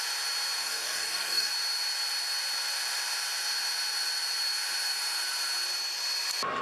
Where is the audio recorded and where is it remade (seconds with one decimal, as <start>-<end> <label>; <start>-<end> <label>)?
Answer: 0.0-0.6 recorded; 0.6-1.5 remade; 1.5-6.6 recorded